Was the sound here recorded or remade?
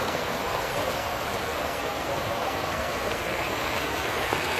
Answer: remade